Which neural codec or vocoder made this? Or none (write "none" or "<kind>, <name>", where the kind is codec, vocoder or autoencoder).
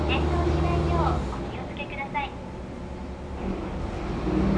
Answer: none